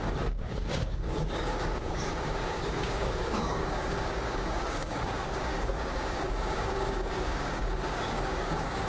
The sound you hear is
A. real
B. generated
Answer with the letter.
B